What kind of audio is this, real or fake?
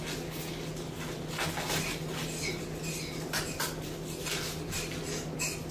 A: real